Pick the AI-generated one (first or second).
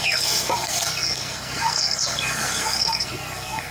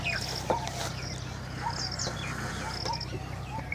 first